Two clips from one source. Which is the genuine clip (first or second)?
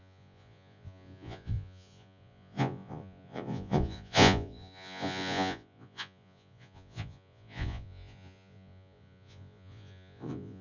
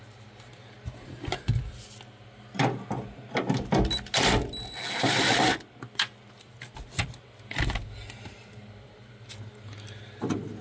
second